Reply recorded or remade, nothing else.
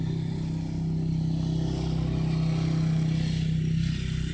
recorded